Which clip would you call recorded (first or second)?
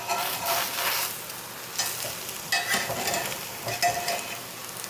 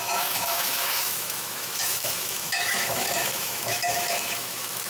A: first